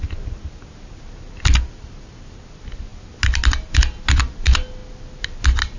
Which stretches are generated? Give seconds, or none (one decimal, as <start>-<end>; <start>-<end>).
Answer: none